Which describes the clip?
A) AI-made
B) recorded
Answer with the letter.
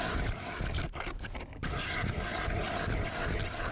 B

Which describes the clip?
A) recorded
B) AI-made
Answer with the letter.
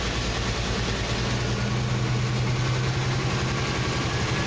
A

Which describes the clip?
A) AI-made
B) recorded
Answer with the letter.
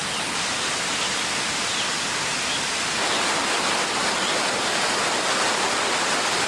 B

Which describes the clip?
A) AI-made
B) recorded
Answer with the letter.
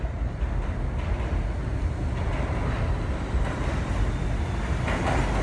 B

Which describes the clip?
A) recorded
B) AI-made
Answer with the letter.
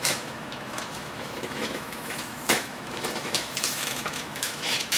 B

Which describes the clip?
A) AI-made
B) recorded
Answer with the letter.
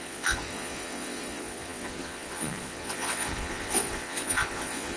A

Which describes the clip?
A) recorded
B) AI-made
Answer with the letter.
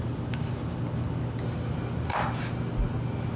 A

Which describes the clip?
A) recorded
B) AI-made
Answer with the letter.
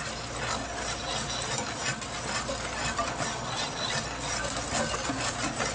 A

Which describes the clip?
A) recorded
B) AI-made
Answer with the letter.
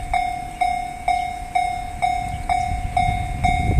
A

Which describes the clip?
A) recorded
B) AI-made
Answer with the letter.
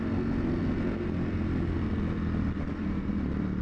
A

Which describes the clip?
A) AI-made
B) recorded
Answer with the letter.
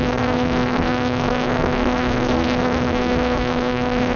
A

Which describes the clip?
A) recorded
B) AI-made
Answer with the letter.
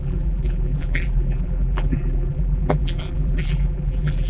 B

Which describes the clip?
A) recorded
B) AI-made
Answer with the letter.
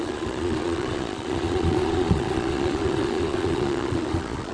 B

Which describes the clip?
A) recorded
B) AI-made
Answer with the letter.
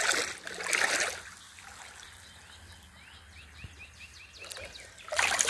A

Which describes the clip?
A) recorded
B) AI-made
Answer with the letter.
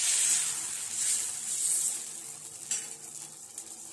A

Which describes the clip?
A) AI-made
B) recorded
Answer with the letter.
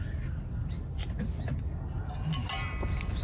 B